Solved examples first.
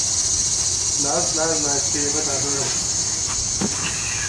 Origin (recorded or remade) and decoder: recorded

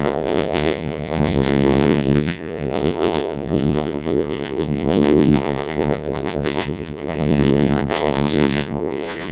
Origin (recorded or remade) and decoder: remade, vocoder, Vocos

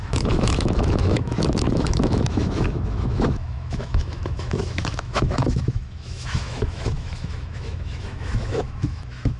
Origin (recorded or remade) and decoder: remade, autoencoder, DAC-VAE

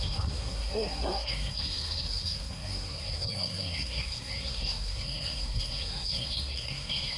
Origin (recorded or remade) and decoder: remade, codec, SNAC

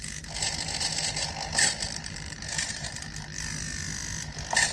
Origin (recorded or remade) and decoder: recorded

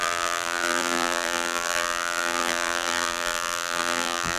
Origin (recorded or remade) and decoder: remade, vocoder, BigVGAN v2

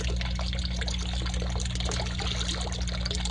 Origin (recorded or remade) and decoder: recorded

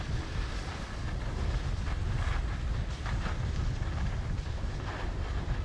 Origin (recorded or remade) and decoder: recorded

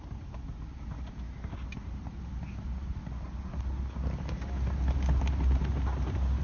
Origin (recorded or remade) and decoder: recorded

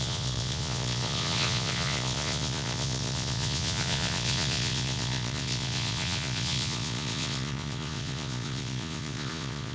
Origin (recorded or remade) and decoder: remade, vocoder, Vocos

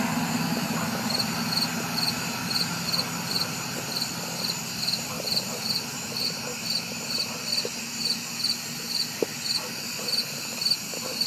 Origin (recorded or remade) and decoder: recorded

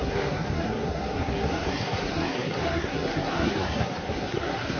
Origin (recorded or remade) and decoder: remade, codec, SNAC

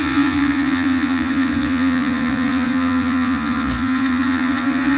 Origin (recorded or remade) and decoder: remade, vocoder, Vocos